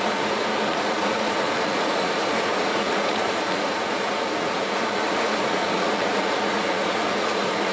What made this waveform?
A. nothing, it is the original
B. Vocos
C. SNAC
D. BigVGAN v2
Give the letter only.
B